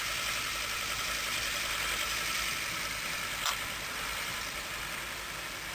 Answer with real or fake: real